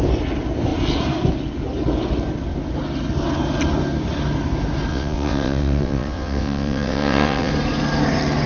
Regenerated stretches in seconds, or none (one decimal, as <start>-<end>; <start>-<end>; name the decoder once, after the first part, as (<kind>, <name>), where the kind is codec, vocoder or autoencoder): 4.9-7.5 (vocoder, WaveNeXt)